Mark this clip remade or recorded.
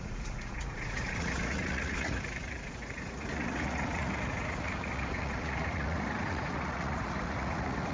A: remade